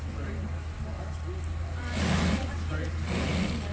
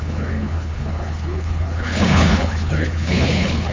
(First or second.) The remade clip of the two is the second